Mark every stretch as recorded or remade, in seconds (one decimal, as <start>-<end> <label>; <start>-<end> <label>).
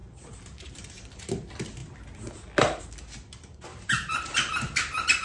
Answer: 0.0-0.8 remade; 0.8-3.7 recorded; 3.7-4.3 remade; 4.3-5.2 recorded